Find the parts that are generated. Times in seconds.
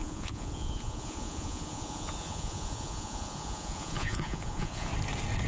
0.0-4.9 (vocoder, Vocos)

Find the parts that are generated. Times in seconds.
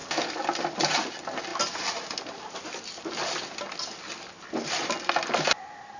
none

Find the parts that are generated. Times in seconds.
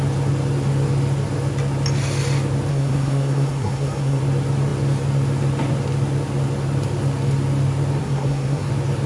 2.7-4.2 (codec, SNAC); 8.0-8.7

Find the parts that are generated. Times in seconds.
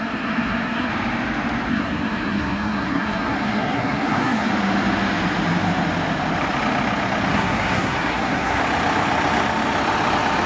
0.0-0.9 (codec, SNAC); 1.7-4.5; 7.3-8.6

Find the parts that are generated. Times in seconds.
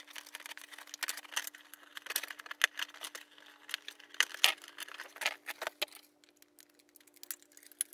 none